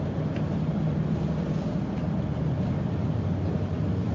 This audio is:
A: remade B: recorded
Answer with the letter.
B